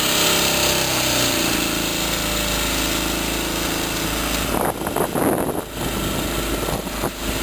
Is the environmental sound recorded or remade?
recorded